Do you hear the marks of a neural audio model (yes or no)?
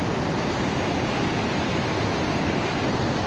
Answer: no